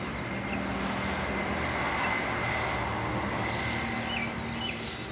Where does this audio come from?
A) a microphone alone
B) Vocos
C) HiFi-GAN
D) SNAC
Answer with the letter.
A